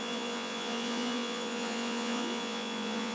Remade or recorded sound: remade